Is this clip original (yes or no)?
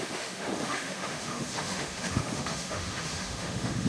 no